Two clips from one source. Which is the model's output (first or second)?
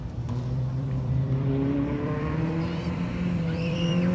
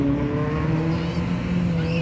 first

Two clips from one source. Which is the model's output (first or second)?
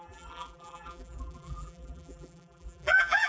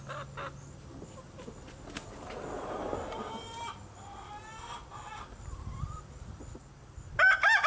first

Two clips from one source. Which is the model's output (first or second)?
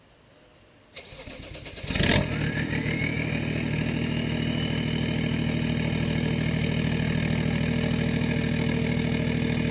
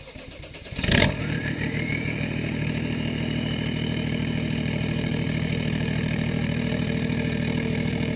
second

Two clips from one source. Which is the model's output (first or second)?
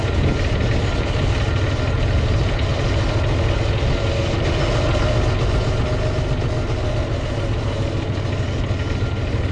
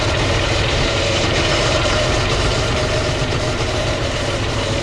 second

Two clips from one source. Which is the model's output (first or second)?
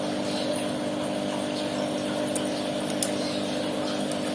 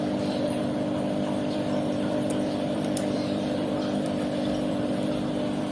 second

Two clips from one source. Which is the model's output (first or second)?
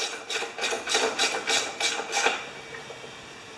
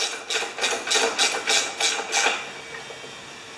first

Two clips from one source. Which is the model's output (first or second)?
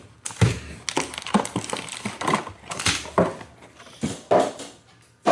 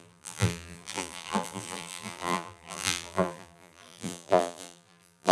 second